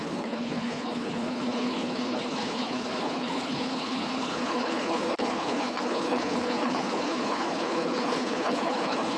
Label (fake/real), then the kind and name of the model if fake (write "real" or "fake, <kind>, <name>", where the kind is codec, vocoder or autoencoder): fake, codec, HILCodec